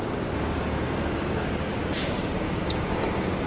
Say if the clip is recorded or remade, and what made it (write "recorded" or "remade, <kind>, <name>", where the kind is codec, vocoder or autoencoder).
remade, codec, DAC